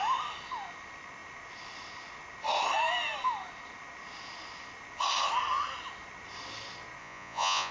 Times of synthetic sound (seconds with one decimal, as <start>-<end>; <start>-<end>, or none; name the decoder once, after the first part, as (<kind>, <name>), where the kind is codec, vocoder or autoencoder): 7.0-7.7 (vocoder, Vocos)